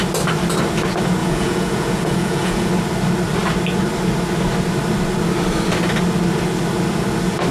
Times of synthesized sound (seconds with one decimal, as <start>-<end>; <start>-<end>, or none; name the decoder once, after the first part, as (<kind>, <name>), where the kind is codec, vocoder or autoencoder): 1.2-2.7 (vocoder, Vocos)